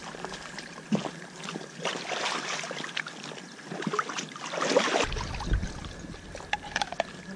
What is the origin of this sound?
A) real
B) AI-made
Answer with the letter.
A